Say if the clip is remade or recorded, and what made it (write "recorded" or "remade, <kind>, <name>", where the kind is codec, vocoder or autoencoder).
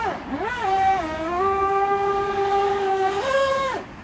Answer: remade, codec, DAC